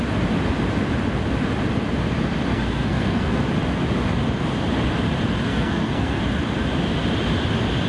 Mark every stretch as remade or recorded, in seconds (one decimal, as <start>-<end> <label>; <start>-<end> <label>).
0.0-2.5 recorded; 2.5-3.4 remade; 3.4-5.5 recorded; 5.5-6.2 remade; 6.2-7.9 recorded

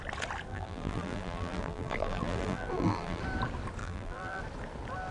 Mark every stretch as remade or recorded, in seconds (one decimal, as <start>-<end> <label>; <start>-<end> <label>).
0.0-0.5 recorded; 0.5-3.2 remade; 3.2-3.8 recorded; 3.8-4.4 remade; 4.4-5.1 recorded

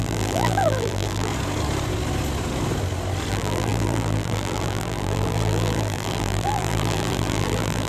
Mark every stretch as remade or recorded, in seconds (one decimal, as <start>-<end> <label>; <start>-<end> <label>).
0.0-1.3 remade; 1.3-3.3 recorded; 3.3-7.9 remade